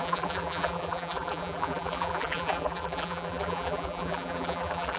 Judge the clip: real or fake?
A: fake